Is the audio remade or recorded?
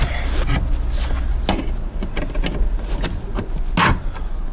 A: recorded